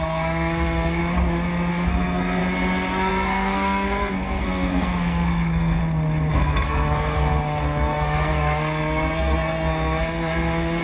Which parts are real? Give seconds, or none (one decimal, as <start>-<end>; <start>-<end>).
1.0-1.7; 2.4-3.1; 5.8-6.3